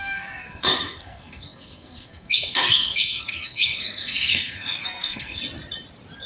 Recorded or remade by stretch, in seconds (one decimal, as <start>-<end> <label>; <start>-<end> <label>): 0.0-5.4 remade; 5.4-6.3 recorded

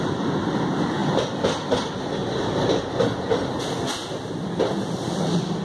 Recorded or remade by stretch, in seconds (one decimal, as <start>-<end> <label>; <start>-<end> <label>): 0.0-5.6 recorded

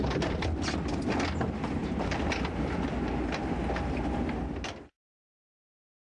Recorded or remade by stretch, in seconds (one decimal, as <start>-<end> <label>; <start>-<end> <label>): 0.0-6.1 recorded

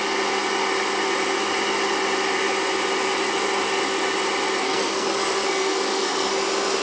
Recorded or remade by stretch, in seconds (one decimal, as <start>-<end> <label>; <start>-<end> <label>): 0.0-4.6 recorded; 4.6-6.3 remade; 6.3-6.8 recorded

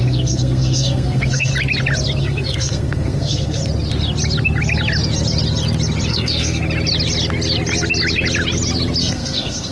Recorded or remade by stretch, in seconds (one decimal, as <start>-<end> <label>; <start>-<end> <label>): 0.0-1.5 remade; 1.5-2.2 recorded; 2.2-3.6 remade; 3.6-6.1 recorded; 6.1-6.6 remade; 6.6-9.0 recorded; 9.0-9.7 remade

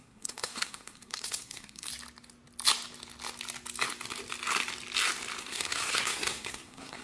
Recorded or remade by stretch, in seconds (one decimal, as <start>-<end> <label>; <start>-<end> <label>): 0.0-1.9 remade; 1.9-5.4 recorded; 5.4-7.0 remade

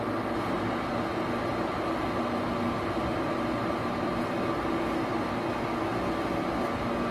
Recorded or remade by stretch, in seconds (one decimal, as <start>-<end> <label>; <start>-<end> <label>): 0.0-7.1 recorded

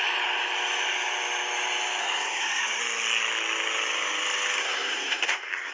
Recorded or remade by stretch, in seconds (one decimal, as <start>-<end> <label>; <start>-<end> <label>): 0.0-2.0 recorded; 2.0-2.8 remade; 2.8-4.6 recorded; 4.6-5.7 remade